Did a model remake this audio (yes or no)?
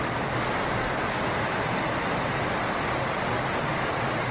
no